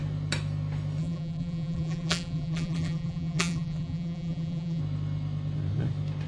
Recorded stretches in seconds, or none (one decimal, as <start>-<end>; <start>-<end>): 0.0-1.0; 4.8-6.3